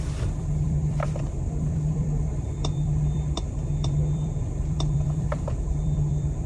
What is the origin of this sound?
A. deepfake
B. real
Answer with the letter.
A